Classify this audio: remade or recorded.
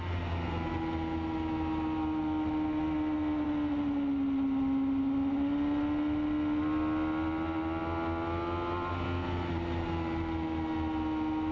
recorded